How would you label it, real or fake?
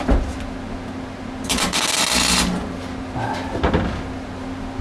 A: real